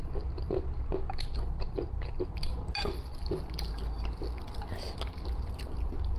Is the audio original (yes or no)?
yes